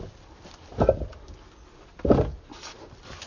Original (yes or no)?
yes